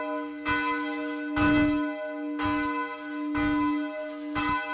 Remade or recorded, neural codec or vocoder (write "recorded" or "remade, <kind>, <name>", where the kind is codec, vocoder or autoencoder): recorded